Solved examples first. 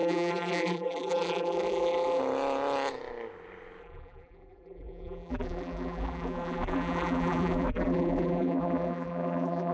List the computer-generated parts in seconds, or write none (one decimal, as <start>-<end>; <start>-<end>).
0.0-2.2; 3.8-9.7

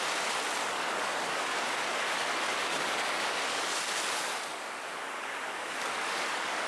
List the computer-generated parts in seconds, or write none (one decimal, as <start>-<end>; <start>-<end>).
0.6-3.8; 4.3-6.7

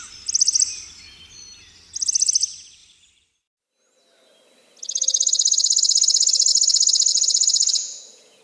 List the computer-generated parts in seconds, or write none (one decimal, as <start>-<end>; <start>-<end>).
7.1-8.4

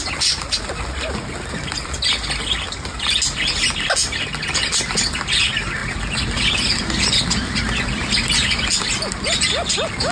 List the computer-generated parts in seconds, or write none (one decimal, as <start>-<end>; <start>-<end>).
none

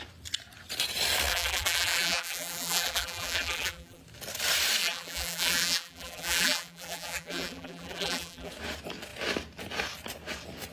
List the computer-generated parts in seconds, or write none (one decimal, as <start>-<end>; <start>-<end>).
1.3-4.0; 4.8-8.5